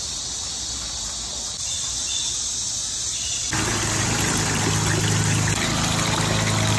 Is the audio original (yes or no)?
yes